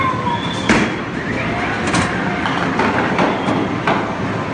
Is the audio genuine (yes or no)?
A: yes